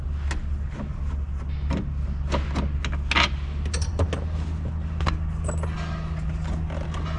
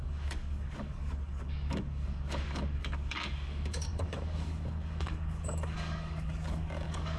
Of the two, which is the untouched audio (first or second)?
first